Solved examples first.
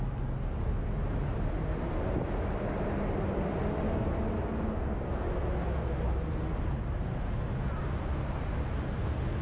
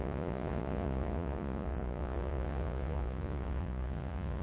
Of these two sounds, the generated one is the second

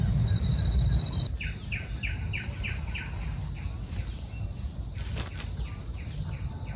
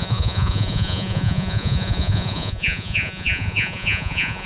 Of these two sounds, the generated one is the second